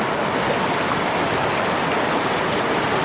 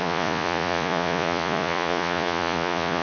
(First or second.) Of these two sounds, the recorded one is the first